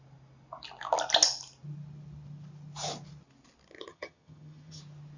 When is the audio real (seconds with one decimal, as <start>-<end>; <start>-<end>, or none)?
0.0-3.9; 4.8-5.2